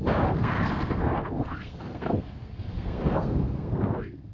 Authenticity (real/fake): fake